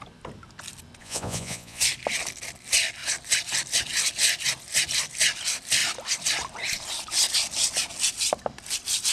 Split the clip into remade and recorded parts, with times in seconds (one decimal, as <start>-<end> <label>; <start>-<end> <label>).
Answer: 0.0-1.0 recorded; 1.0-1.8 remade; 1.8-9.1 recorded